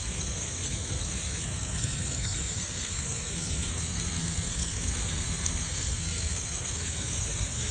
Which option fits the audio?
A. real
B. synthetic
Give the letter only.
B